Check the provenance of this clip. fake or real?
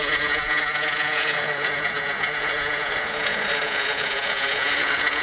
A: fake